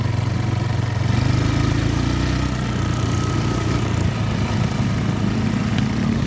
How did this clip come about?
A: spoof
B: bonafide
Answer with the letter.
B